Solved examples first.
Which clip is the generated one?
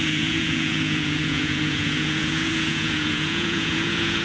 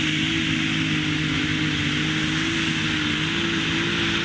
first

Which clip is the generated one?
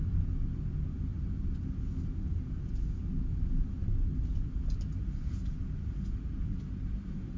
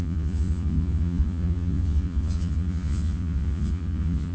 second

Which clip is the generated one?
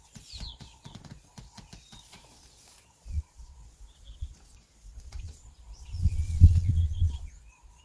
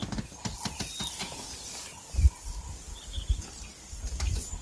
first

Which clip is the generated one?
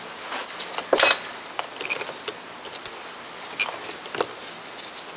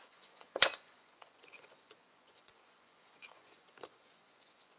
second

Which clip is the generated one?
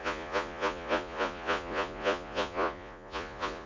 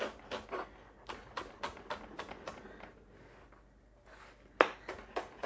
first